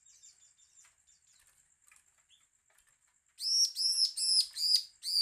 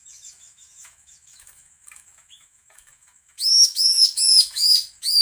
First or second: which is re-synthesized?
second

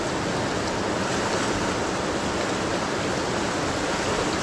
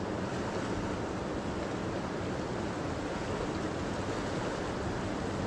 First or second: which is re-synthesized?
first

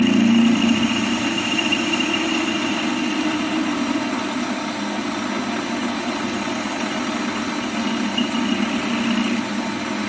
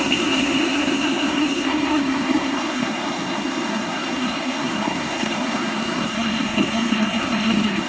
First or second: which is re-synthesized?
second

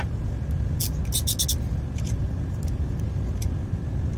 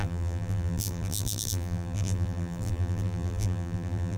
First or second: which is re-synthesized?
second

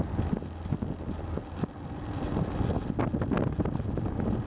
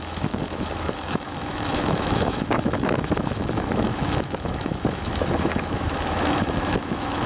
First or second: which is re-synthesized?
second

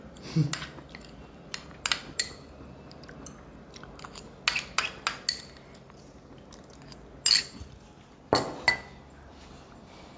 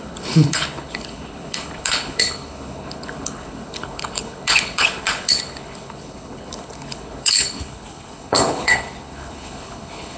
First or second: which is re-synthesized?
second